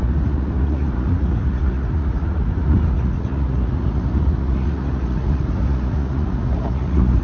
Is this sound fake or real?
fake